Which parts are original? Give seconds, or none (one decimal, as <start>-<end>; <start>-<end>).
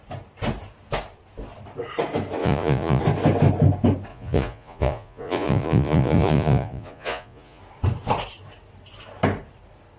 0.0-2.4; 3.0-4.1; 7.6-10.0